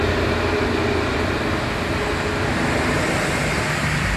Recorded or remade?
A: recorded